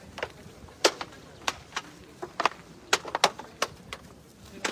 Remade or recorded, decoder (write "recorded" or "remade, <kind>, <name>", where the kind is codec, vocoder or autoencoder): recorded